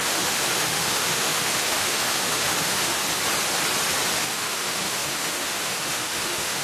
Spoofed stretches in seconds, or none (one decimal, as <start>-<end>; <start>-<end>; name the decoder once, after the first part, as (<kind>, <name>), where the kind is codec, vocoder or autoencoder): 0.0-2.9 (autoencoder, DAC-VAE); 4.2-6.6